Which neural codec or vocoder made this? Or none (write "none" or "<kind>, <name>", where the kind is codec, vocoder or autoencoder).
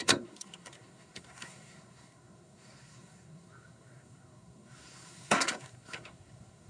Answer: codec, SNAC